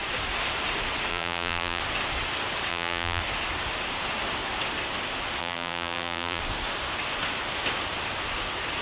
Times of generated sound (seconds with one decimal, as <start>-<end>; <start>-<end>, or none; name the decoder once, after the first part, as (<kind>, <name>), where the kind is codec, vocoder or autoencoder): 1.1-1.8 (vocoder, BigVGAN v2); 2.7-3.2; 5.4-6.4